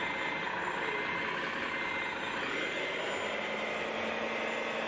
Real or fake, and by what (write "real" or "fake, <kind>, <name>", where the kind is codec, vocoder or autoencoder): real